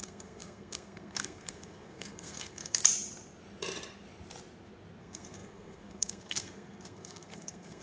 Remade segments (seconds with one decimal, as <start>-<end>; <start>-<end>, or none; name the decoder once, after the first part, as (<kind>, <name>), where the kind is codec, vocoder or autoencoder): 0.0-2.8 (codec, SNAC); 5.0-7.8